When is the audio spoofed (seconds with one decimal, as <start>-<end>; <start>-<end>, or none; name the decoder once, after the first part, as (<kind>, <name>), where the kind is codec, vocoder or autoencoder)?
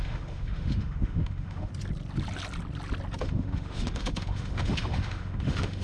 0.0-1.7 (autoencoder, DAC-VAE); 3.2-5.8